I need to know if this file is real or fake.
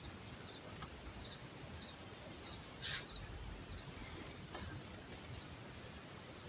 real